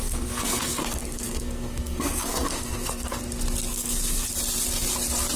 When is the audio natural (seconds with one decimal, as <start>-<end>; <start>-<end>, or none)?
3.2-3.7; 4.3-5.4